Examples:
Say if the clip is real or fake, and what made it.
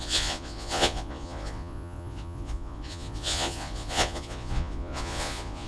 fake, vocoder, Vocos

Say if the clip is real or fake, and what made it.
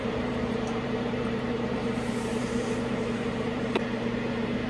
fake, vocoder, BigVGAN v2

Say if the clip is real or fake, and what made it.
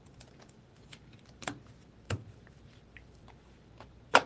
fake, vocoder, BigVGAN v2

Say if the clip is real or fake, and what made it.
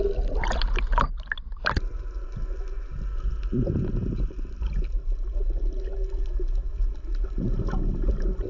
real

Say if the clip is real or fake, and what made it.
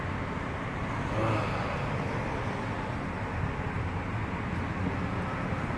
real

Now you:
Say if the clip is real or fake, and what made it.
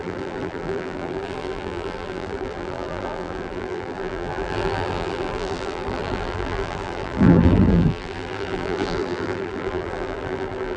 fake, vocoder, BigVGAN v2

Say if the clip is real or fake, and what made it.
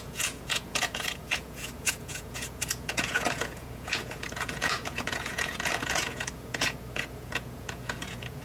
fake, vocoder, Vocos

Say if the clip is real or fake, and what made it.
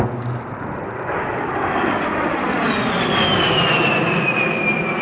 real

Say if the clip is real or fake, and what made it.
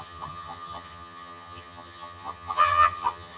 fake, vocoder, HiFi-GAN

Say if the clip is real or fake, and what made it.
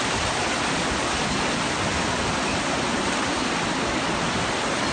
real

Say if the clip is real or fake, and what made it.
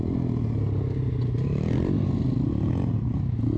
real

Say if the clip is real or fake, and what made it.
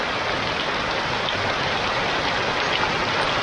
real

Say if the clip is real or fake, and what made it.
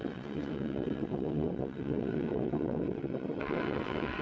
fake, vocoder, WaveNeXt